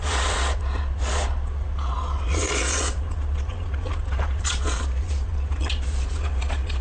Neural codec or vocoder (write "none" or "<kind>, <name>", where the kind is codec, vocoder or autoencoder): vocoder, Vocos